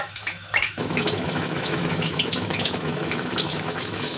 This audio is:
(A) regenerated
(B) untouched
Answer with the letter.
A